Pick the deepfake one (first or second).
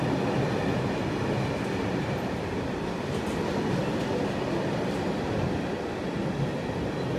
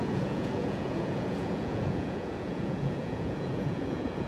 second